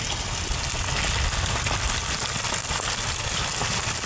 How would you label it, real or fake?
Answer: real